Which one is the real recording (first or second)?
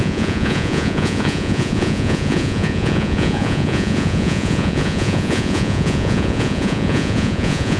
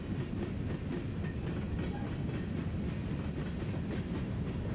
second